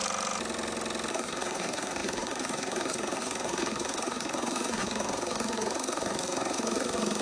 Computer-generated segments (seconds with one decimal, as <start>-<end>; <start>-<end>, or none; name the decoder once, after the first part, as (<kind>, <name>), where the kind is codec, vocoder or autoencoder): 1.1-7.2 (codec, SNAC)